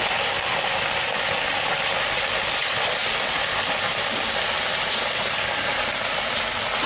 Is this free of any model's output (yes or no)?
yes